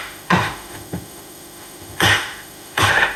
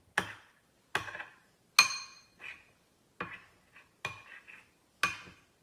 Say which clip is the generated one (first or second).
first